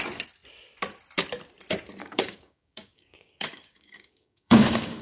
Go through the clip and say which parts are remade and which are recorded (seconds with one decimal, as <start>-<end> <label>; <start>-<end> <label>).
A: 0.0-2.0 recorded; 2.0-5.0 remade

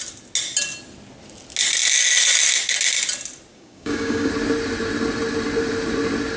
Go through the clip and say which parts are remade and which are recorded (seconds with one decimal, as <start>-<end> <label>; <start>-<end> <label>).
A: 0.0-3.5 recorded; 3.5-4.3 remade; 4.3-6.4 recorded

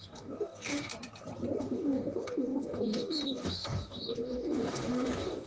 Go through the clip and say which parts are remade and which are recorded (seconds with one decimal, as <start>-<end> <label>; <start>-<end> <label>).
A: 0.0-0.9 remade; 0.9-1.6 recorded; 1.6-5.5 remade

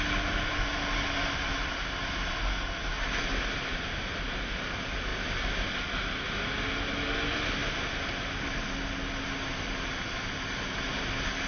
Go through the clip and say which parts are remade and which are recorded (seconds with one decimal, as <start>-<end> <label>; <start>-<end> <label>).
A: 0.0-11.5 recorded

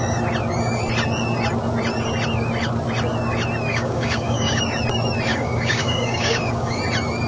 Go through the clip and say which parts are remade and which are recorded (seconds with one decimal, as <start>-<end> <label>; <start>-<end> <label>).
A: 0.0-3.7 recorded; 3.7-4.6 remade; 4.6-5.3 recorded; 5.3-6.8 remade; 6.8-7.3 recorded

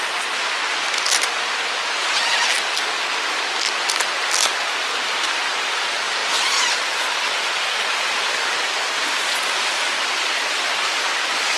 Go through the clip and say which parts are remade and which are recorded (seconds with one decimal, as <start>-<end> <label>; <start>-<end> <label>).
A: 0.0-11.6 recorded

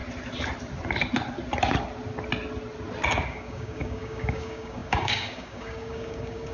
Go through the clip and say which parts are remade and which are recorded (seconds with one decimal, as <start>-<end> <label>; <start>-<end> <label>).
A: 0.0-3.3 recorded; 3.3-6.5 remade